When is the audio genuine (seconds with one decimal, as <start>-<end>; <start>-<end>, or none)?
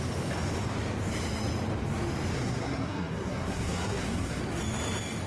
0.0-2.3; 4.4-5.3